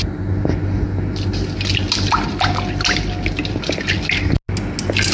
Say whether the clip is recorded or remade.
recorded